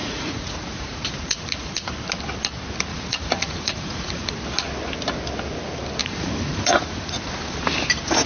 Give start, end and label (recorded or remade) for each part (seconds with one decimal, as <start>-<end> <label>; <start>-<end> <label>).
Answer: 0.0-1.9 remade; 1.9-2.9 recorded; 2.9-4.3 remade; 4.3-6.0 recorded; 6.0-7.3 remade; 7.3-8.3 recorded